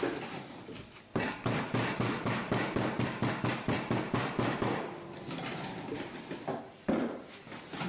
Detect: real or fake fake